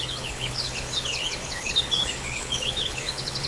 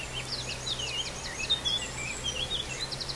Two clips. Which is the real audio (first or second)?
second